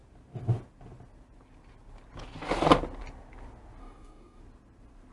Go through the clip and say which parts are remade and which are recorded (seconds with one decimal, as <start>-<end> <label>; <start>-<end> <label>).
0.0-3.8 recorded; 3.8-4.4 remade; 4.4-5.1 recorded